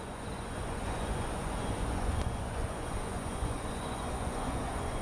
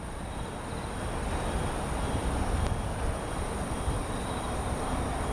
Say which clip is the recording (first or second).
second